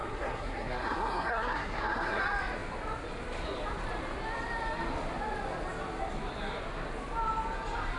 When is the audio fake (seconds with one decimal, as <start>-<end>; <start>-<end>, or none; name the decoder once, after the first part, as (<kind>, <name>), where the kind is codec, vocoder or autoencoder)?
0.0-2.2 (codec, SNAC)